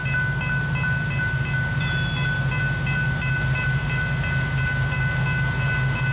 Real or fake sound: real